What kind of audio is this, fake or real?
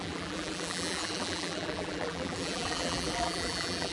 fake